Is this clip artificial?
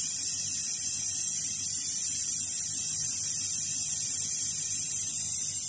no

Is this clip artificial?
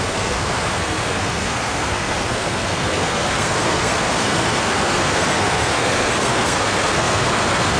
yes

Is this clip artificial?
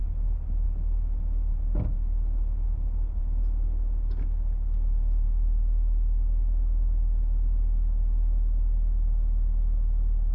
no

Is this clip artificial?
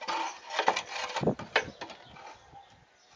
no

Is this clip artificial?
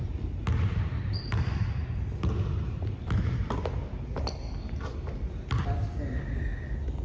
no